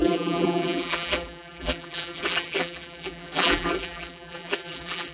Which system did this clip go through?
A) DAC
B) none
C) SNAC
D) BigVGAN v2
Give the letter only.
D